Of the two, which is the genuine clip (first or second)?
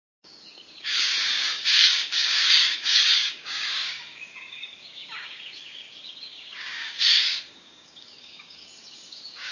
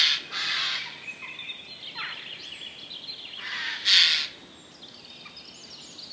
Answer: second